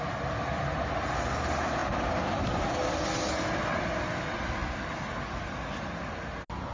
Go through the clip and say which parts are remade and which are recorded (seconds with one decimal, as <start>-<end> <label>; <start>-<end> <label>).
0.0-4.6 recorded; 4.6-5.9 remade; 5.9-6.7 recorded